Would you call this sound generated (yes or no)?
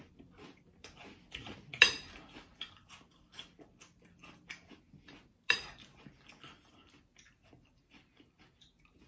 no